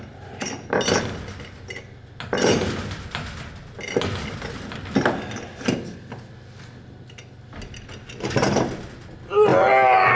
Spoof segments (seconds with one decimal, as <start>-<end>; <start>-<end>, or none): none